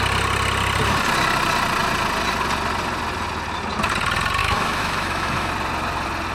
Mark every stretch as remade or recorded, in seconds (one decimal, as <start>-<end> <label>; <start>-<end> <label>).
0.0-4.4 recorded; 4.4-5.5 remade; 5.5-6.3 recorded